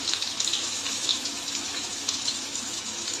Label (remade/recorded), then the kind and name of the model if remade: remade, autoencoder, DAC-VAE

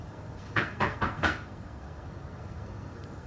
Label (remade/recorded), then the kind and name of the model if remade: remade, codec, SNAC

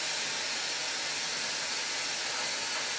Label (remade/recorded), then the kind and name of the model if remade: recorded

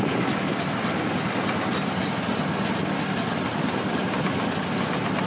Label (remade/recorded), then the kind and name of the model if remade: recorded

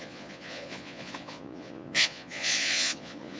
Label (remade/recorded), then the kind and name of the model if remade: remade, vocoder, Vocos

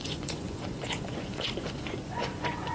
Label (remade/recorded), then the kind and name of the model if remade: remade, vocoder, Vocos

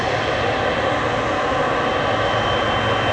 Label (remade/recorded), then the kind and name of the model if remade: recorded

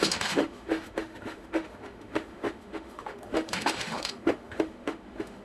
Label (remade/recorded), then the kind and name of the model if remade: remade, autoencoder, DAC-VAE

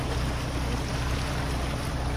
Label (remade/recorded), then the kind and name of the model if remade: recorded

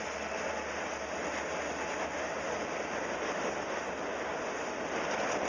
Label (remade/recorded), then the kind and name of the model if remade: recorded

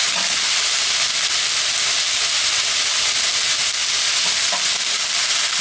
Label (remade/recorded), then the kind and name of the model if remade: recorded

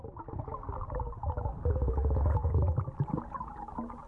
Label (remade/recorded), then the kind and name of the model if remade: recorded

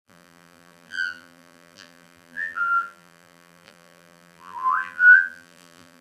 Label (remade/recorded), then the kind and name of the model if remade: remade, vocoder, BigVGAN v2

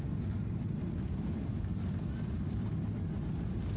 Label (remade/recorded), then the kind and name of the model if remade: recorded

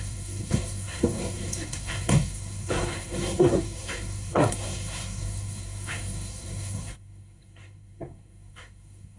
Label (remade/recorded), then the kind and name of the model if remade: remade, codec, SNAC